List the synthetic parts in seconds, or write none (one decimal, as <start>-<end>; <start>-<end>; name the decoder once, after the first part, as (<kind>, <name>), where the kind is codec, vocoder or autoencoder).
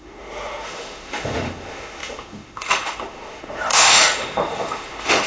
0.0-5.3 (autoencoder, DAC-VAE)